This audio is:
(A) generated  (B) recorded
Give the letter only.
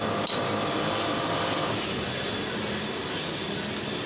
B